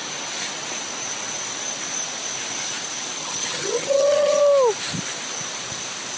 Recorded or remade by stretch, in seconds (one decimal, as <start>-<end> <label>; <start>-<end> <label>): 0.0-3.2 recorded; 3.2-4.4 remade; 4.4-6.2 recorded